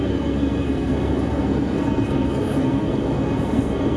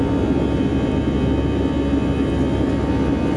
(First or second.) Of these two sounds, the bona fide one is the second